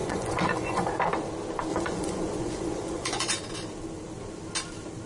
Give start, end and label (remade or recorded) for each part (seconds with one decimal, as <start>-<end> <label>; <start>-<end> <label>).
0.0-0.9 remade; 0.9-1.7 recorded; 1.7-3.3 remade; 3.3-5.1 recorded